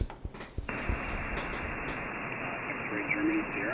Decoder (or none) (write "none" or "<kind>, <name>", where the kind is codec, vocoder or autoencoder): none